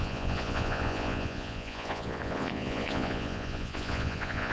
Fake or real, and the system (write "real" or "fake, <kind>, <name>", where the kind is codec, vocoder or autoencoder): fake, vocoder, Vocos